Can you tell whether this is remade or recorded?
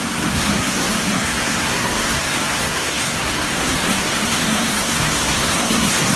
remade